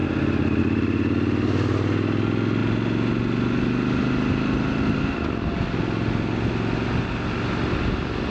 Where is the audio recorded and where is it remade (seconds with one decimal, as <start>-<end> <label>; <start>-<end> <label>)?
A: 0.0-8.3 recorded